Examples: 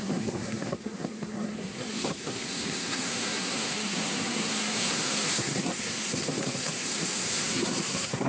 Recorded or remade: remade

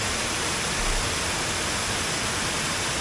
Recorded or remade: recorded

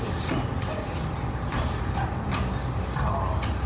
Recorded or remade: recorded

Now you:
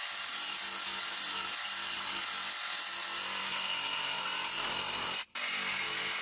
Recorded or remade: recorded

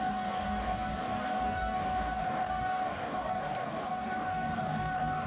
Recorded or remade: remade